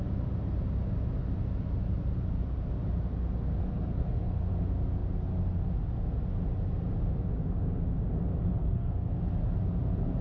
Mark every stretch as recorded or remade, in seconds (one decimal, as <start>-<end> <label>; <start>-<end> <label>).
0.0-3.6 recorded; 3.6-4.5 remade; 4.5-8.6 recorded; 8.6-9.2 remade; 9.2-10.2 recorded